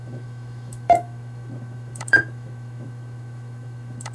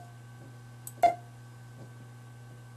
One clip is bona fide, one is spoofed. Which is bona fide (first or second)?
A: second